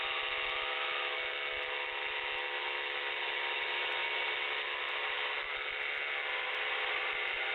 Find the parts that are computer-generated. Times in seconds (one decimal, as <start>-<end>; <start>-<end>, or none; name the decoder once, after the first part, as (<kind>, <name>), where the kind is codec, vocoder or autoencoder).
none

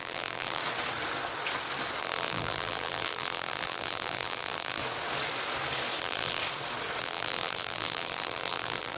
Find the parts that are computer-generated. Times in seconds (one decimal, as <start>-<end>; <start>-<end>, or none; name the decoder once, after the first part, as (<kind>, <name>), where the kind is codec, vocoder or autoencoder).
0.0-0.6 (vocoder, BigVGAN v2); 2.0-4.8; 6.0-6.4; 7.0-9.0

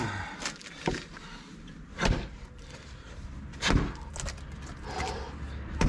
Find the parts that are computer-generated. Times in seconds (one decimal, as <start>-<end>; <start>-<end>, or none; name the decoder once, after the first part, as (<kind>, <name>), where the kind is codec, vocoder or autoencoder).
none

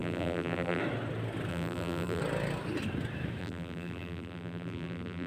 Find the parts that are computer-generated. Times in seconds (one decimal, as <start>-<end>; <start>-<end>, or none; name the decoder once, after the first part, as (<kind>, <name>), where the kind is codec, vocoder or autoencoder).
0.0-0.8 (vocoder, BigVGAN v2); 1.5-2.2; 3.4-5.3

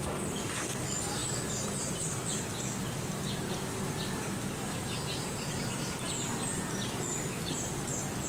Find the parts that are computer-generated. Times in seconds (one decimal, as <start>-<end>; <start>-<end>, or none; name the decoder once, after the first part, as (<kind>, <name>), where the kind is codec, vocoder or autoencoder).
none

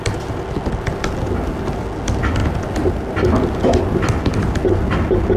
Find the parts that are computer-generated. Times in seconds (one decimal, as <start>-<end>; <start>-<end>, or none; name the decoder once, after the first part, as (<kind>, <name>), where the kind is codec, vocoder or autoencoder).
none